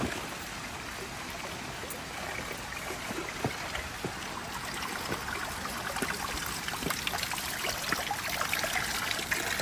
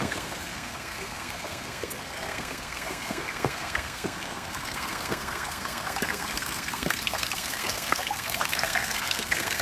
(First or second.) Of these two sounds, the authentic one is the first